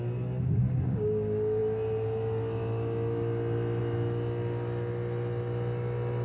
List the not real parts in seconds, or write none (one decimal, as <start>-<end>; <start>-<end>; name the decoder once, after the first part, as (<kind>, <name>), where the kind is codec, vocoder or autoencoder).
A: none